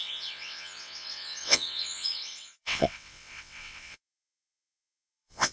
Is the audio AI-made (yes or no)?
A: yes